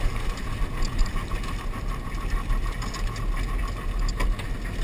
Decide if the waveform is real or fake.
real